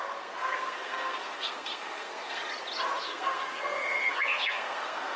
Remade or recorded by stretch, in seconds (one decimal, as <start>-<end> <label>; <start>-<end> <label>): 0.0-2.4 remade; 2.4-3.0 recorded; 3.0-5.2 remade